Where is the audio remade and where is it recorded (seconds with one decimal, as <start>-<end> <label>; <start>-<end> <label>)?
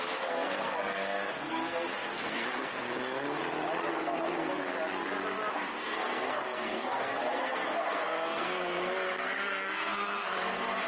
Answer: 0.0-3.4 remade; 3.4-3.9 recorded; 3.9-4.7 remade; 4.7-5.5 recorded; 5.5-10.9 remade